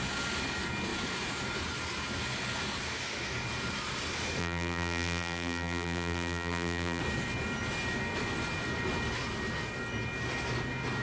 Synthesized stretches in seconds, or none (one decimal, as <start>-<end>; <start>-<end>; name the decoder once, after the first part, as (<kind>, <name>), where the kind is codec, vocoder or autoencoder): 4.4-7.0 (vocoder, BigVGAN v2)